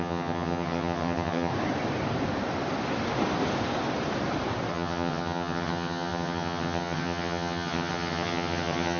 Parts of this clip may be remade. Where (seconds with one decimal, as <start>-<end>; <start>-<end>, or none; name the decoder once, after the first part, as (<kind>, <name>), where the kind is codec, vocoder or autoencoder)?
0.0-1.5 (vocoder, HiFi-GAN); 4.7-9.0